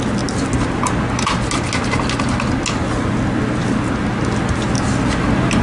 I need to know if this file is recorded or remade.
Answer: recorded